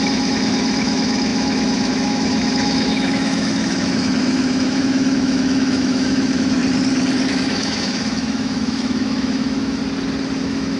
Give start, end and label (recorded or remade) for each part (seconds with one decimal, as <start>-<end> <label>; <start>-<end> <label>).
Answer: 0.0-6.6 remade; 6.6-7.3 recorded; 7.3-9.8 remade; 9.8-10.4 recorded; 10.4-10.8 remade